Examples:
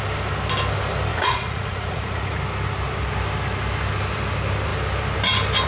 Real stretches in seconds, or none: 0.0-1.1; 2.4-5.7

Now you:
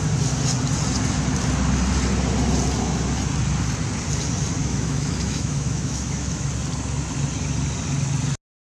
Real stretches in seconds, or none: 0.0-4.6; 6.5-8.7

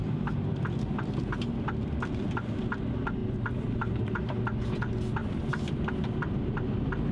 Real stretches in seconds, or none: 0.0-0.5; 1.2-3.2; 4.4-5.2; 5.9-7.1

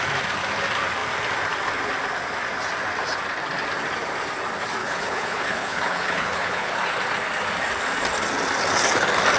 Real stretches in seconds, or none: 0.0-4.8; 6.9-9.4

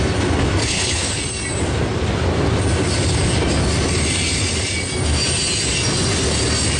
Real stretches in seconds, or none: 0.0-0.6; 1.2-6.8

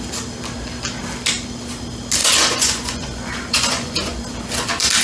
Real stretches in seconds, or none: 0.0-2.2; 4.2-5.0